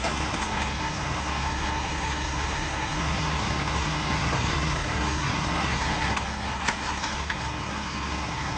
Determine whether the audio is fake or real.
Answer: fake